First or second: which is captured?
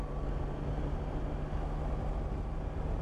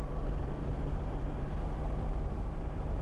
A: first